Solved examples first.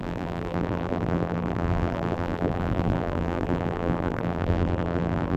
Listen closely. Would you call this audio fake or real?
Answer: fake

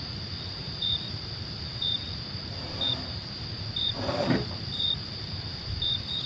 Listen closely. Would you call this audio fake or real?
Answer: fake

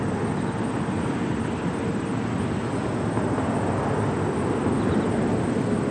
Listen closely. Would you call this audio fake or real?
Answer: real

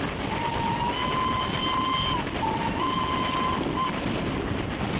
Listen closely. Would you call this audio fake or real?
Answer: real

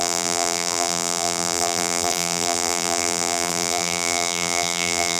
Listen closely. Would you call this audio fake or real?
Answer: fake